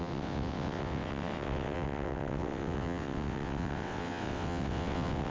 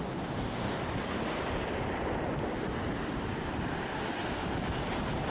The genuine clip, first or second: second